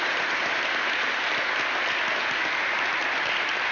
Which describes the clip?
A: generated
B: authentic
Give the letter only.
B